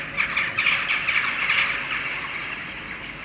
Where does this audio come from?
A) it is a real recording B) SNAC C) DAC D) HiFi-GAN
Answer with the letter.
A